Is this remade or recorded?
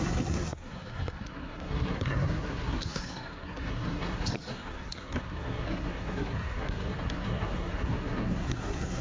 remade